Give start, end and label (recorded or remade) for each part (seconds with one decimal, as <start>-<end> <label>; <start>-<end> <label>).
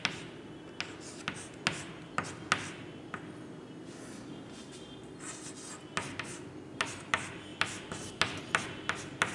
0.0-9.3 recorded